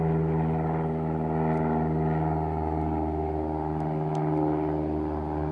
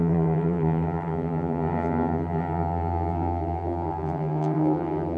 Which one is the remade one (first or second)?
second